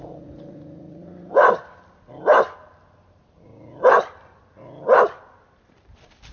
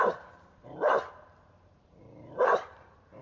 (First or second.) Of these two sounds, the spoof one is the second